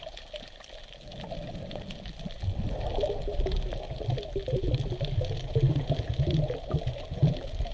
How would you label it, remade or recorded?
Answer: recorded